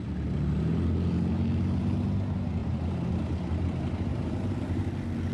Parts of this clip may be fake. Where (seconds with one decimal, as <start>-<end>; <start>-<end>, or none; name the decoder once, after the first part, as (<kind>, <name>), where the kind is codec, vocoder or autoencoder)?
2.6-3.1 (vocoder, BigVGAN v2); 4.1-4.8